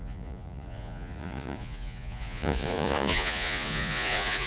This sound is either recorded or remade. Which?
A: remade